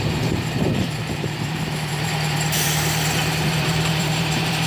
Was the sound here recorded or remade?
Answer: remade